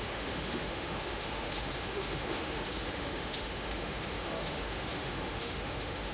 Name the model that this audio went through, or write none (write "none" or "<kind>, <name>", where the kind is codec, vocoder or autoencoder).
autoencoder, DAC-VAE